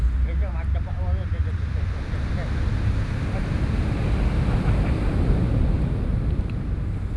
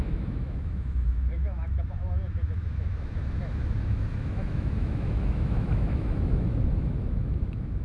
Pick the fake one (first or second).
second